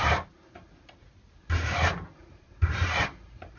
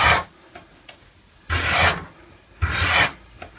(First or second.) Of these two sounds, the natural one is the second